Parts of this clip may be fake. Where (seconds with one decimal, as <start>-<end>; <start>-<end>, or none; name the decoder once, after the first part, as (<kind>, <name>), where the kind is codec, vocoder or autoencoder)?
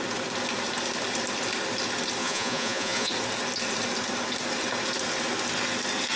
2.2-3.1 (vocoder, Vocos)